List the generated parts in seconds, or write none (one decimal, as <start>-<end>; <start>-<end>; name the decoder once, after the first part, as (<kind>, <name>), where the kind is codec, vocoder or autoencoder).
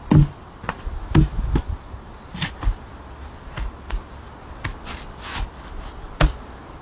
1.6-2.6 (vocoder, BigVGAN v2)